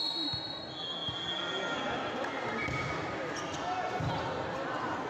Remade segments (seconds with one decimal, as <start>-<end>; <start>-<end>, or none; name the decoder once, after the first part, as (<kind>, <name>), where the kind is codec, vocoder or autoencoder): none